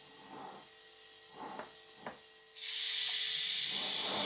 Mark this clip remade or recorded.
recorded